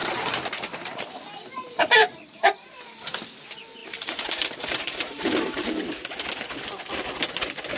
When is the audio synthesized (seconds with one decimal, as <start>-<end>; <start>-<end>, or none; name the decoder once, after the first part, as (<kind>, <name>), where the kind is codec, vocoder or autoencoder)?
2.0-2.7 (vocoder, BigVGAN v2); 3.8-5.7

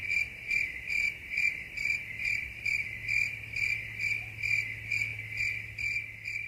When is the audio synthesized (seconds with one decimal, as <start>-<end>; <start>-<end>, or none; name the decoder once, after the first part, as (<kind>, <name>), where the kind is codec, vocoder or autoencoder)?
0.0-3.7 (vocoder, BigVGAN v2)

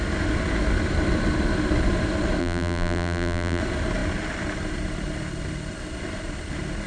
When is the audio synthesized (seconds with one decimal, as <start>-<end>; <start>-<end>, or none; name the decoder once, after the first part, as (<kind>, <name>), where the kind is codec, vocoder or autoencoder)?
2.4-3.6 (vocoder, BigVGAN v2)

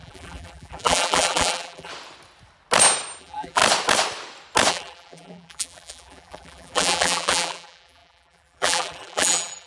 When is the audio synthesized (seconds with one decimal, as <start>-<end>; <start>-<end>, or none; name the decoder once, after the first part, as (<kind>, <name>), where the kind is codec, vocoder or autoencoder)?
0.0-1.9 (vocoder, BigVGAN v2); 3.2-3.6; 4.7-9.7

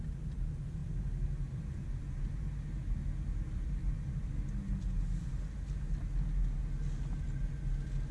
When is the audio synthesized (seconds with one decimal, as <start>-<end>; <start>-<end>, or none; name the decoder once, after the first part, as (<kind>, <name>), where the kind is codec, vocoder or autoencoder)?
none

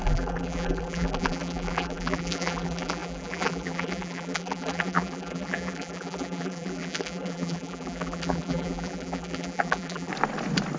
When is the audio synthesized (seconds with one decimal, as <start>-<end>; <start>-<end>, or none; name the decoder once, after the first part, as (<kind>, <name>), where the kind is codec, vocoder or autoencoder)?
0.0-10.1 (vocoder, BigVGAN v2)

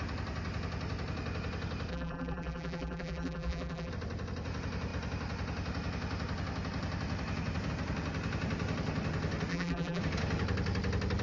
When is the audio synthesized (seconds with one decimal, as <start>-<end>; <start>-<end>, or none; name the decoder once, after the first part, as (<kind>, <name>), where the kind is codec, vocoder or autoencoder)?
1.9-3.9 (vocoder, BigVGAN v2); 9.5-10.0

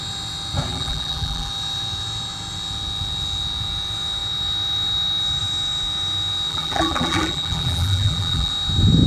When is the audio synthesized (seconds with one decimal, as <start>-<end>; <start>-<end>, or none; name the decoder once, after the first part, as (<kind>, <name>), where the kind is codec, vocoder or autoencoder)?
0.7-1.5 (vocoder, BigVGAN v2); 6.5-8.5